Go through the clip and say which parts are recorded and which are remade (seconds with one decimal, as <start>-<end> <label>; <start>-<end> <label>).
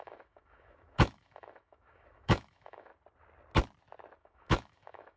0.0-2.9 remade; 2.9-4.2 recorded; 4.2-5.2 remade